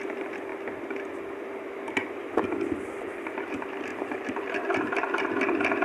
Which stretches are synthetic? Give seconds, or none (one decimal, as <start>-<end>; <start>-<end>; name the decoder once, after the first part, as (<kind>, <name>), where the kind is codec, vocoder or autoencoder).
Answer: 3.9-4.6 (vocoder, BigVGAN v2)